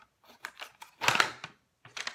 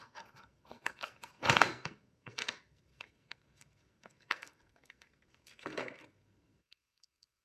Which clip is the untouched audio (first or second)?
first